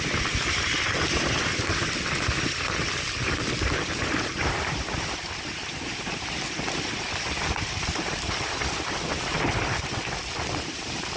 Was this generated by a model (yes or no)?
no